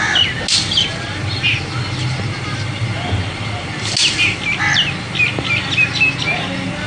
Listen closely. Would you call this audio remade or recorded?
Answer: recorded